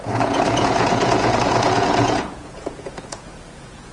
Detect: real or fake fake